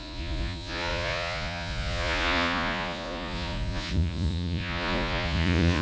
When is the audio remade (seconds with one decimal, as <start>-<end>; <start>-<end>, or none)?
0.0-5.8